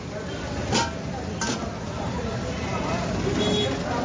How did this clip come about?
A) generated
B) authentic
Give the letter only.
B